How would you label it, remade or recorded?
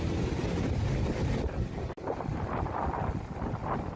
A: recorded